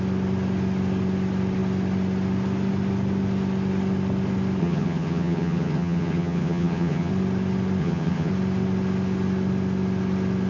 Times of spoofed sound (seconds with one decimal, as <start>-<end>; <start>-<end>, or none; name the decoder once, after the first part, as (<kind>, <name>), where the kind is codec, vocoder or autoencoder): 4.6-7.1 (vocoder, HiFi-GAN); 7.8-8.3